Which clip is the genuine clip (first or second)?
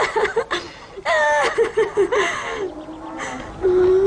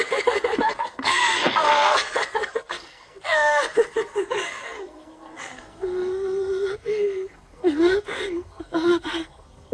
first